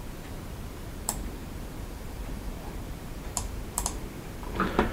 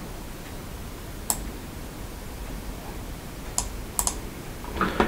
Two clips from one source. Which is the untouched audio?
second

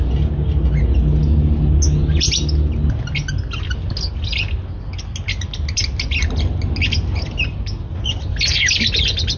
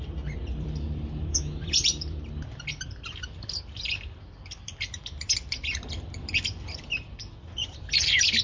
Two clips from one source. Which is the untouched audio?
first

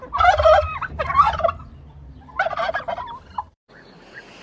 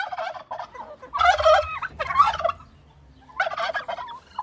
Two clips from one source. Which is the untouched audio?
second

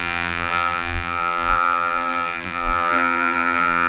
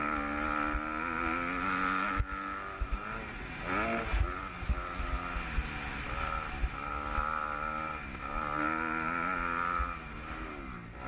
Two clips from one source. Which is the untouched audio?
second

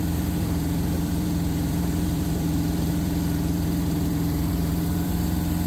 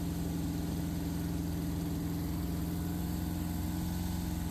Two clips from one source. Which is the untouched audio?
second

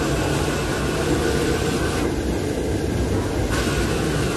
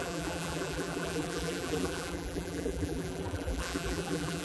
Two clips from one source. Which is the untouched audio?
first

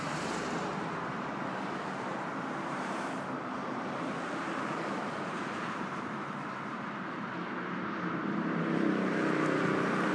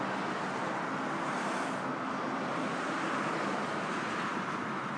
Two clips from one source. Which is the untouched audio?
second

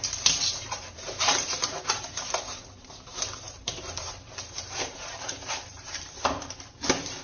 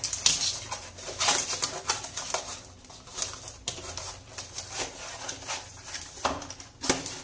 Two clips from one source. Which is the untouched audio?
second